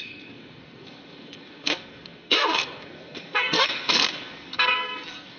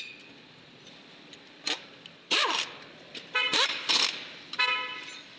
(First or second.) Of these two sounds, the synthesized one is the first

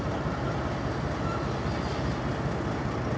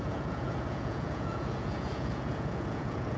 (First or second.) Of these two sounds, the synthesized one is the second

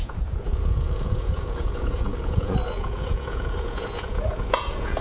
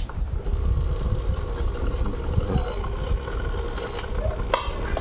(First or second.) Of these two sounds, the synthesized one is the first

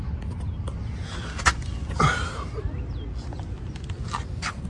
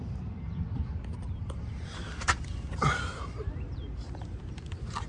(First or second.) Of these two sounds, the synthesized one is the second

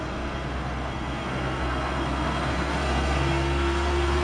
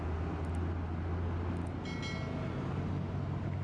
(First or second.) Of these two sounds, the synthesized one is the first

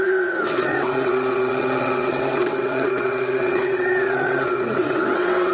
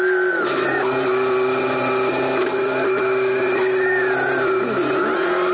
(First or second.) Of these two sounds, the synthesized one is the first